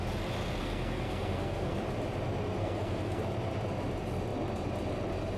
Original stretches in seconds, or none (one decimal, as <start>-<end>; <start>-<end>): 0.0-0.6; 1.8-2.6; 3.2-5.4